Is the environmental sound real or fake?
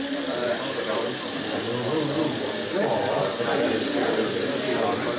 real